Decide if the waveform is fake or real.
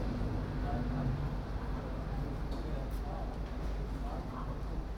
real